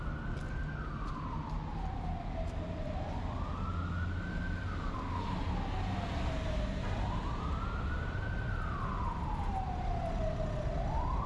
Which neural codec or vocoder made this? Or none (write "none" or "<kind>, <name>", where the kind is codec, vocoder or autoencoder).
none